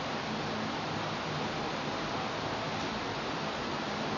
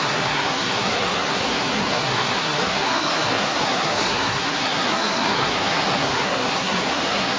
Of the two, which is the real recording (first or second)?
first